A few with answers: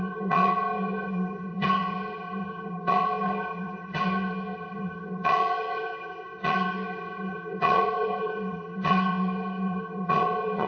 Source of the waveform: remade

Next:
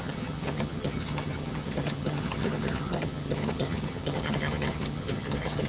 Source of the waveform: remade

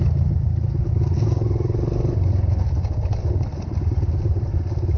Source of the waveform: recorded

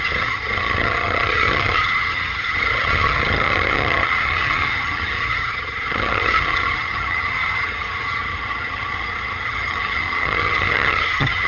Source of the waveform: remade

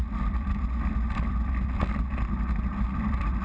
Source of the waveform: recorded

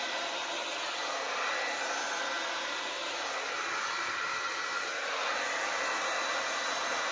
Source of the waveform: recorded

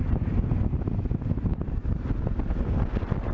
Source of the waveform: recorded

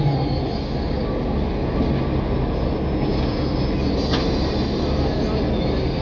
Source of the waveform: recorded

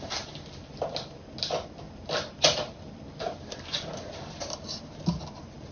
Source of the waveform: recorded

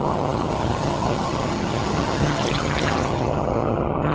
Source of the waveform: remade